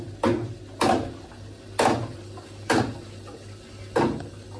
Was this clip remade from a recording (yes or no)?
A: no